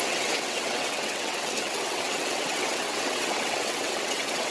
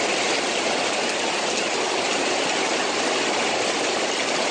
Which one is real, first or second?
second